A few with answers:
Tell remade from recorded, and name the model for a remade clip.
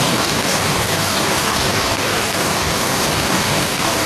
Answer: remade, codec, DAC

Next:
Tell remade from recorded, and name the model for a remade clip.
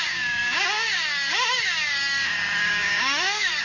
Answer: remade, codec, DAC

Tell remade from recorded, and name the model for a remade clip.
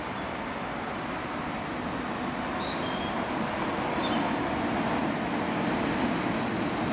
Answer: recorded